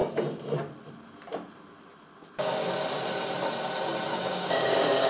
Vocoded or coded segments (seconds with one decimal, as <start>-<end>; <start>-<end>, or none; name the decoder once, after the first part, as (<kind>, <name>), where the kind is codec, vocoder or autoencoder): 4.1-5.1 (codec, DAC)